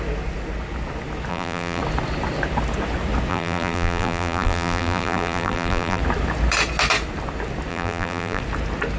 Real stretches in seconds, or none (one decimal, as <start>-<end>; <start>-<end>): 0.0-1.3; 1.8-3.3; 6.0-7.7; 8.4-9.0

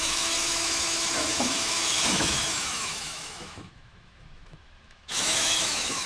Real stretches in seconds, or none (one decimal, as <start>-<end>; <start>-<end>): none

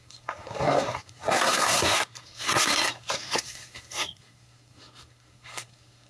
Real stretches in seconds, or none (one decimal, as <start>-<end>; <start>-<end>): none

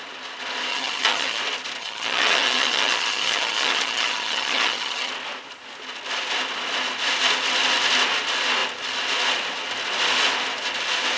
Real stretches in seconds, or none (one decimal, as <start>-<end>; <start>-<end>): 0.0-0.7; 1.4-1.8; 5.1-11.2

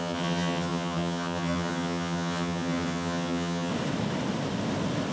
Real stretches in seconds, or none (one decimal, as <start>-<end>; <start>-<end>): 3.7-5.1